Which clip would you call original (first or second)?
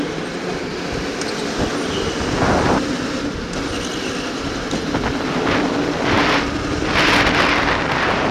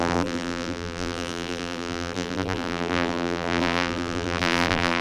first